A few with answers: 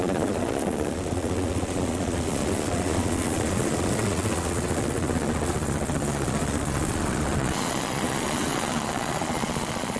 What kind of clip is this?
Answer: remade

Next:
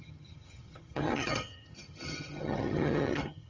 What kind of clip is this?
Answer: remade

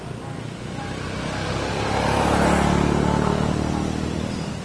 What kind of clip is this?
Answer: recorded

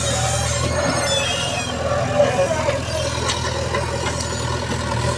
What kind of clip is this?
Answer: recorded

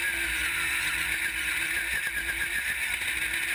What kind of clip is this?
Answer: recorded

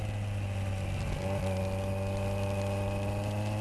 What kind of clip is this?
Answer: recorded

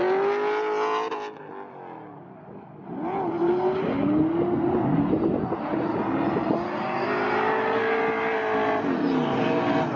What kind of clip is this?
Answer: recorded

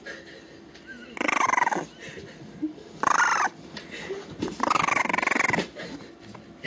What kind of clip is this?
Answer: recorded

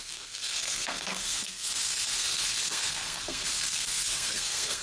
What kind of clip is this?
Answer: remade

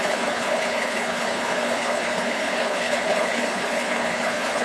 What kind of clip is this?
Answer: remade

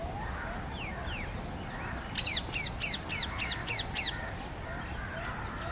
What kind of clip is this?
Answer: recorded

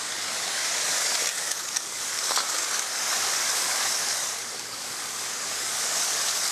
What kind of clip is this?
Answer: remade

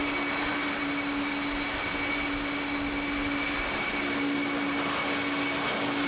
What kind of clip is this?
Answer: recorded